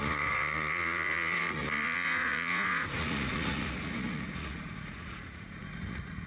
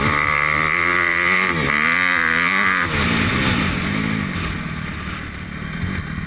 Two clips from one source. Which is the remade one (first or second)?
first